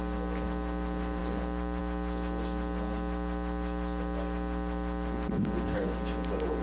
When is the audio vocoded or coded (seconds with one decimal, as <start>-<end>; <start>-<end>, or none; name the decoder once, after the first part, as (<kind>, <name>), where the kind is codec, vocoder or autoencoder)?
none